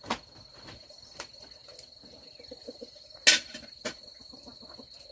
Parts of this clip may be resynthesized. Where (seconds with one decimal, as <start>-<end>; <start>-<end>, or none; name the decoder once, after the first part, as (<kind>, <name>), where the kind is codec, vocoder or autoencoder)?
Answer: none